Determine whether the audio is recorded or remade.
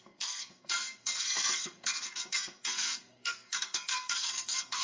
remade